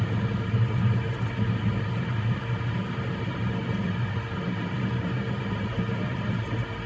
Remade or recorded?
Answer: recorded